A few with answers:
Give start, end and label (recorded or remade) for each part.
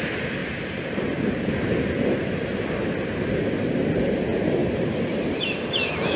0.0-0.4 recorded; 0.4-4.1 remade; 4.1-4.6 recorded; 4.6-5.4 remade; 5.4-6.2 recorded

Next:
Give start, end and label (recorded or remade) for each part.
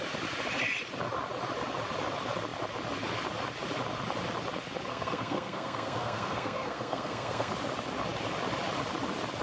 0.0-4.9 recorded; 4.9-7.5 remade; 7.5-9.4 recorded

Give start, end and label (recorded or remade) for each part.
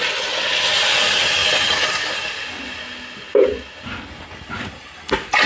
0.0-5.5 recorded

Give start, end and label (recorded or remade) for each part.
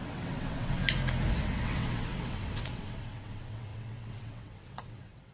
0.0-0.8 remade; 0.8-1.3 recorded; 1.3-5.3 remade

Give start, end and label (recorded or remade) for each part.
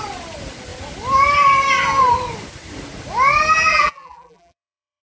0.0-3.7 recorded; 3.7-5.0 remade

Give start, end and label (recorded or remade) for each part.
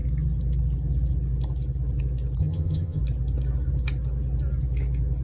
0.0-2.4 recorded; 2.4-3.0 remade; 3.0-5.2 recorded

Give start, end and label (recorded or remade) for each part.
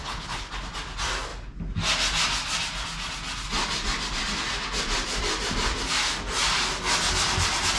0.0-0.5 remade; 0.5-7.8 recorded